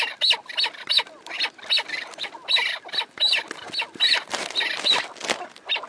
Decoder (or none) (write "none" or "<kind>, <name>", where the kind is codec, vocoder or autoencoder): none